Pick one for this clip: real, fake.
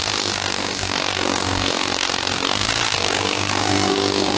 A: fake